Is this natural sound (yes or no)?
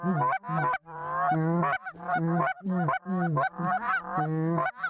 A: yes